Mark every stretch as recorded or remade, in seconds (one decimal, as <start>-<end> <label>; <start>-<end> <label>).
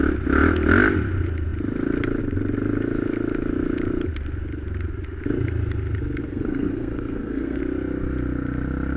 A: 0.0-6.2 recorded; 6.2-7.6 remade; 7.6-9.0 recorded